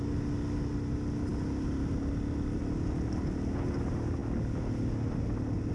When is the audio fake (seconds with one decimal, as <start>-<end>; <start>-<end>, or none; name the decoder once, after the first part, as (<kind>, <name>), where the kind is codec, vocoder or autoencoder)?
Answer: none